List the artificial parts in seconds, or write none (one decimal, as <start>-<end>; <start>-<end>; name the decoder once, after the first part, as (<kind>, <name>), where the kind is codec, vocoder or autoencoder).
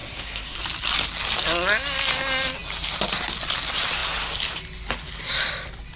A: 0.0-0.6 (codec, SNAC)